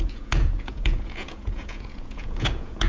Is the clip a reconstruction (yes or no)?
yes